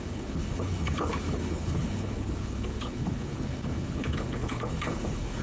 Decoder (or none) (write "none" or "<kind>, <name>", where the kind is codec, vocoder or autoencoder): codec, HILCodec